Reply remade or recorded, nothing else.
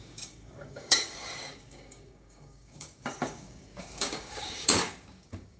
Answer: remade